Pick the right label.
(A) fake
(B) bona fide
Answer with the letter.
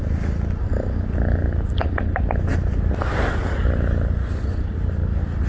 B